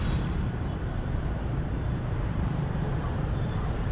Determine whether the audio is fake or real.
fake